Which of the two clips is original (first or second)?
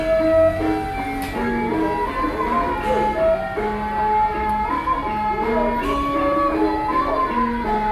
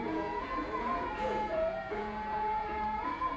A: first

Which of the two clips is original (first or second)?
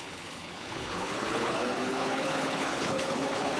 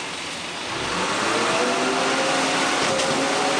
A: second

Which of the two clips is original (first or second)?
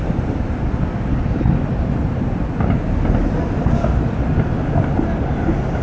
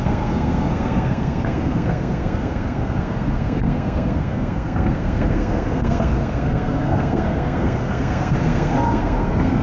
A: first